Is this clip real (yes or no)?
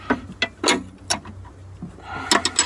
yes